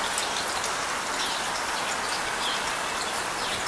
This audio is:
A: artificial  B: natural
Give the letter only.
B